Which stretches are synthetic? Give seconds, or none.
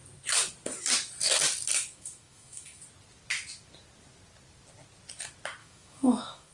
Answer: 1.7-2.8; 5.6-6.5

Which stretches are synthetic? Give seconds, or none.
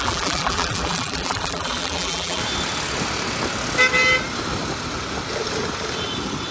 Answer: 0.0-2.4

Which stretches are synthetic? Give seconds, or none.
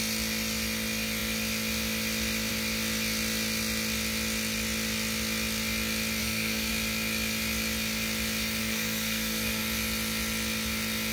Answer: 6.2-6.7; 8.6-9.6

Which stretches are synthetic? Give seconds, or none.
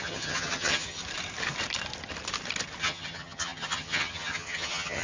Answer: 0.0-1.0; 2.8-5.0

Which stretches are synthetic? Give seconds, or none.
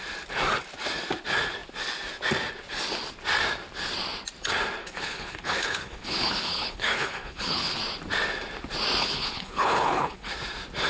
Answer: 4.8-7.8; 9.0-10.3